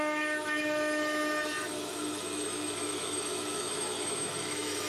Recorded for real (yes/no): no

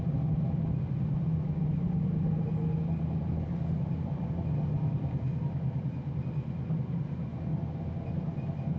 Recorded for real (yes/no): yes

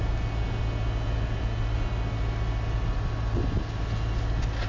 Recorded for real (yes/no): yes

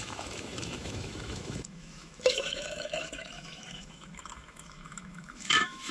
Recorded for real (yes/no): no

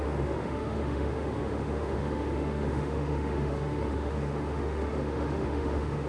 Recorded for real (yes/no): no